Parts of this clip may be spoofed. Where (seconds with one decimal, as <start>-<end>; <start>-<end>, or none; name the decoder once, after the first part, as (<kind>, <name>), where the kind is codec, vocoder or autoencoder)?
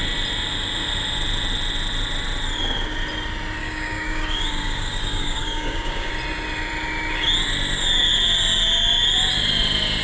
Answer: 3.6-6.1 (codec, DAC)